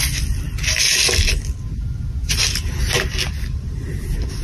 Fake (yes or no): no